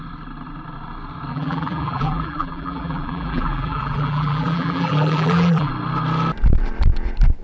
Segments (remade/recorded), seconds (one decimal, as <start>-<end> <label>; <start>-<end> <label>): 0.0-1.3 recorded; 1.3-5.7 remade; 5.7-7.4 recorded